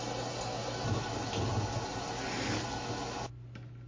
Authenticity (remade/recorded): recorded